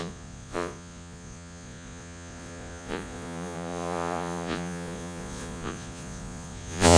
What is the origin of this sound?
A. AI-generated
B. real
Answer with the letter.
A